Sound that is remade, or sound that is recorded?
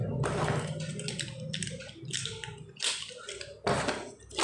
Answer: recorded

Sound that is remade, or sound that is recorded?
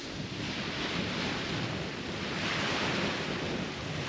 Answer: recorded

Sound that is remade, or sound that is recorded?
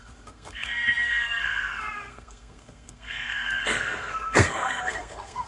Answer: remade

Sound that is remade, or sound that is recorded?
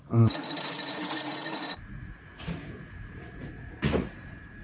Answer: remade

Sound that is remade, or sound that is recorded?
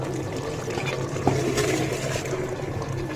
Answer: recorded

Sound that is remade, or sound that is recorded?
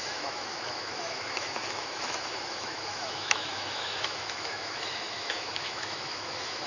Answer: remade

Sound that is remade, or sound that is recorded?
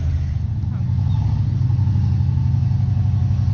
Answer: recorded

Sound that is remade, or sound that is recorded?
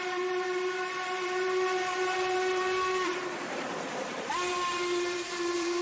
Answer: remade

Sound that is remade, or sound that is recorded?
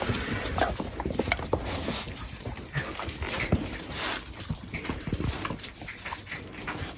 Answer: recorded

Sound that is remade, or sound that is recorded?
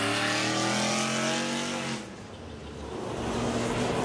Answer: recorded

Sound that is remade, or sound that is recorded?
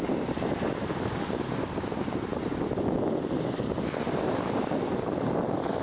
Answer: recorded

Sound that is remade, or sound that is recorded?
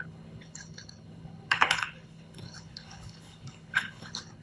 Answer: remade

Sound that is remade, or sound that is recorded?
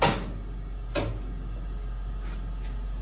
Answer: recorded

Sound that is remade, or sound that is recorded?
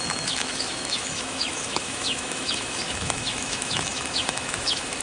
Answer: remade